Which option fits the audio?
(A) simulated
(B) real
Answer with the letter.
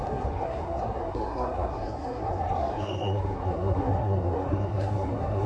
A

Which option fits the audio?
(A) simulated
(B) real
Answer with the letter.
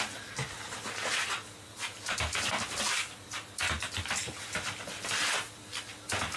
B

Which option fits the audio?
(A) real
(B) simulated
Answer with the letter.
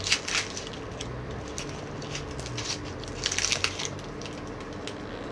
A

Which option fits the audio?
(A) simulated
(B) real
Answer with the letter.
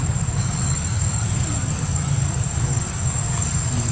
A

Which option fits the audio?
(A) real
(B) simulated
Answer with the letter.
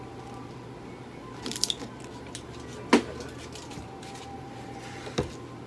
A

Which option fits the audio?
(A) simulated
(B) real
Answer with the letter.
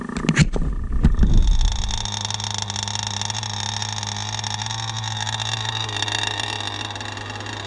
B